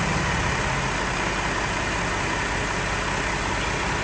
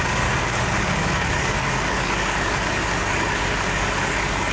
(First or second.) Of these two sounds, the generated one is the second